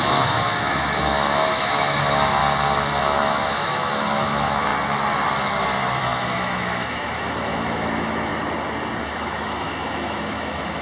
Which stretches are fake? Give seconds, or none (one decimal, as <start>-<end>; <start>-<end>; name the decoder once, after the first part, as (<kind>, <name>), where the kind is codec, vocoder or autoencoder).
0.0-2.4 (autoencoder, DAC-VAE); 3.0-4.7; 6.0-8.3; 9.0-10.8